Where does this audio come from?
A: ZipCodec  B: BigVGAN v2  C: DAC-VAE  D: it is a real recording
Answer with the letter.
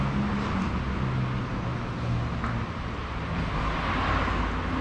D